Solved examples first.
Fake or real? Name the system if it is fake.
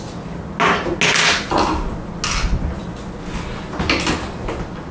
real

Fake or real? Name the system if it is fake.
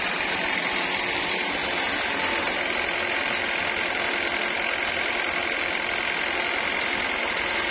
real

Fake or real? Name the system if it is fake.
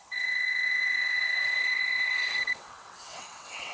fake, vocoder, WaveNeXt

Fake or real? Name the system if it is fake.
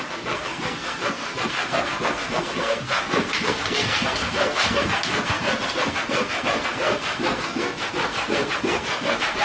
fake, codec, SNAC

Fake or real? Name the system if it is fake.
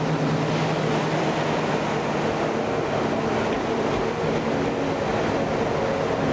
real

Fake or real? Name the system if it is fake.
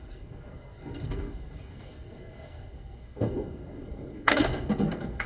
fake, codec, SNAC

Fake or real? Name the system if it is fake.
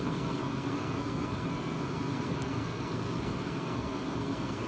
fake, codec, SNAC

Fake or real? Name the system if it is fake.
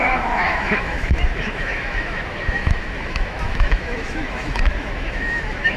fake, autoencoder, DAC-VAE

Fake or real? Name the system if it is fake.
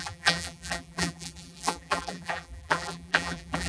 fake, vocoder, BigVGAN v2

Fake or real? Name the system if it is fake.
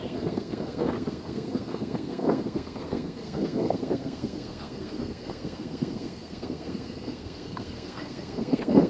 fake, codec, SNAC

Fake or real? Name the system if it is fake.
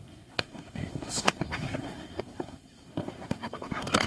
fake, codec, SNAC